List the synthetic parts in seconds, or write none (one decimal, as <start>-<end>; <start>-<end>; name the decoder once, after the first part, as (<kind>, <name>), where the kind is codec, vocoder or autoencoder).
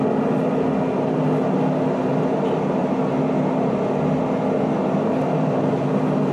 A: none